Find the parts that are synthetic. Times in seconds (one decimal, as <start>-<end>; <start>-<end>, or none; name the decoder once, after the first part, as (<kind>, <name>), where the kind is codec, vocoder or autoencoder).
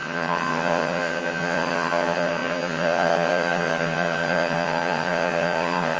0.0-6.0 (vocoder, HiFi-GAN)